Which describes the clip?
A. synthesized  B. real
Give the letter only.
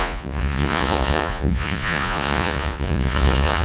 A